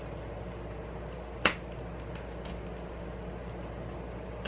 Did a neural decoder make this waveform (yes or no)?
no